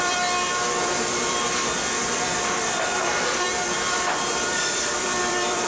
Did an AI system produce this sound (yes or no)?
yes